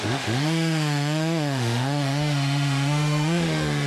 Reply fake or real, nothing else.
fake